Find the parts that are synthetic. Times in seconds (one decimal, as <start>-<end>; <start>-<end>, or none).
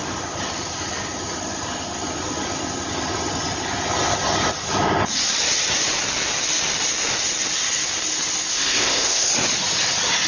8.5-9.3